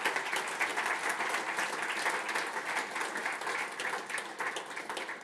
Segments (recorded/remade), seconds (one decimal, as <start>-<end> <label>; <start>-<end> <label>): 0.0-5.2 recorded